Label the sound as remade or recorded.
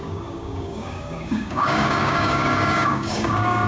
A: remade